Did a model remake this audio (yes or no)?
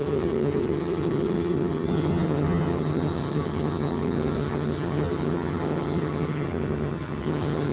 yes